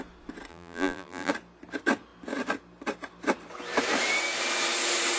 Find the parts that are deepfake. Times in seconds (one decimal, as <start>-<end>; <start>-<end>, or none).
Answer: 0.5-1.3